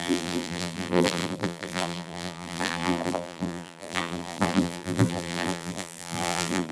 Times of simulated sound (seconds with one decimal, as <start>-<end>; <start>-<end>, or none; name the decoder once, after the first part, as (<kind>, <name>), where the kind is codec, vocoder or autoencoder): 0.0-6.7 (vocoder, BigVGAN v2)